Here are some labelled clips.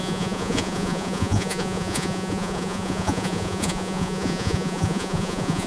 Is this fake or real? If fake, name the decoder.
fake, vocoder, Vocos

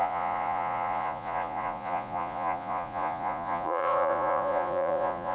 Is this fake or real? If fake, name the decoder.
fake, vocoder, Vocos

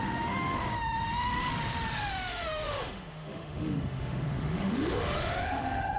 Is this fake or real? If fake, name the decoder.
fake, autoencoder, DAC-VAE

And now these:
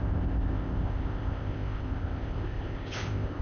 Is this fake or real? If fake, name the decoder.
fake, codec, ZipCodec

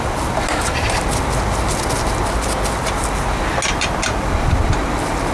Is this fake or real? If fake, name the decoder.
real